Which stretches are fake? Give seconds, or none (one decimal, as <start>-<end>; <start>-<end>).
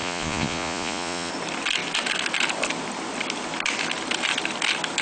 0.0-1.3